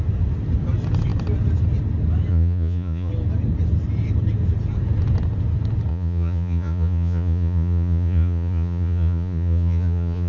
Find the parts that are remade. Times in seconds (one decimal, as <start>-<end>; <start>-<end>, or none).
2.3-3.1; 5.9-10.3